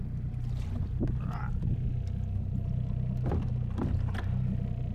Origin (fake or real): real